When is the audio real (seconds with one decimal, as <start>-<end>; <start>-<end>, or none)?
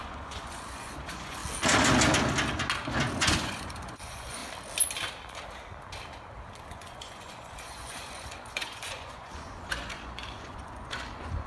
1.4-3.0; 4.4-6.7